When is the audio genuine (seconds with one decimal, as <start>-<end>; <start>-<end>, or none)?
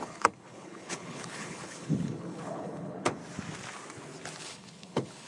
3.2-4.4